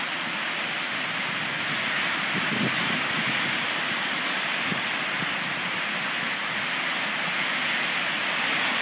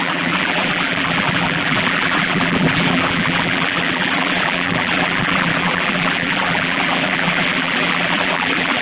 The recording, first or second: first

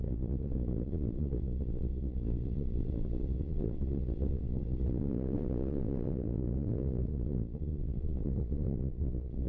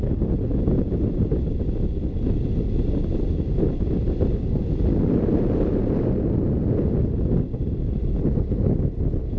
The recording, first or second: second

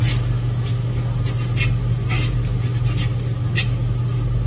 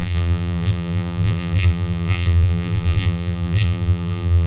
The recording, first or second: first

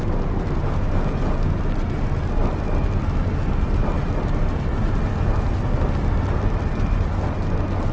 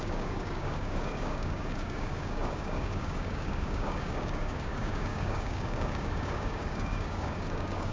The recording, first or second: first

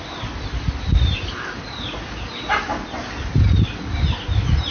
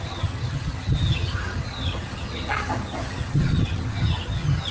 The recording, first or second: first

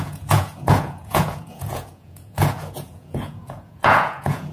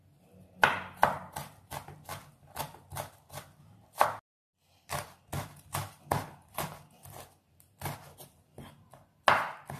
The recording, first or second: second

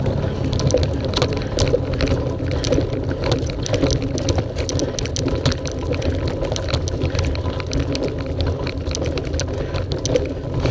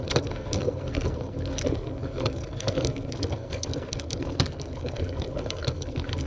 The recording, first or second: first